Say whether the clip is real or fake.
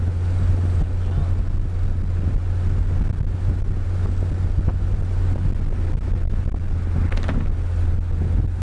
real